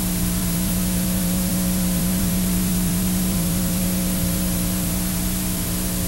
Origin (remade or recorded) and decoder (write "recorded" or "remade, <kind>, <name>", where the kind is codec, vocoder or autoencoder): remade, vocoder, BigVGAN v2